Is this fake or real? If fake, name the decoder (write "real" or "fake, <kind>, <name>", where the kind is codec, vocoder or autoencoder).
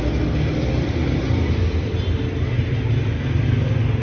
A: real